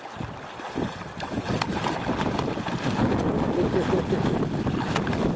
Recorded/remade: recorded